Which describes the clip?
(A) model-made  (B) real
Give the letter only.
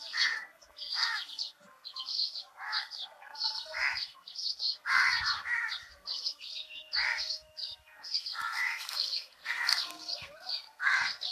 A